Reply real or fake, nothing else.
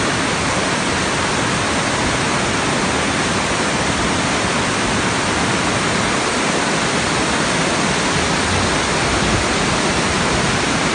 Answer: real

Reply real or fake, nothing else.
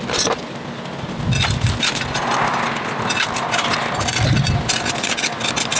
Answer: real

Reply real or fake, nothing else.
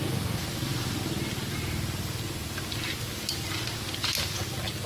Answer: real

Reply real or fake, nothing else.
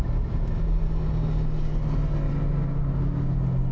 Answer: real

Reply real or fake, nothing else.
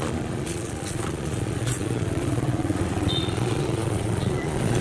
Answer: fake